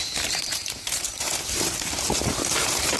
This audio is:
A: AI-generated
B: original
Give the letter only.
A